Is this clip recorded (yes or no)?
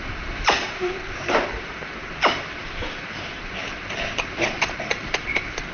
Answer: no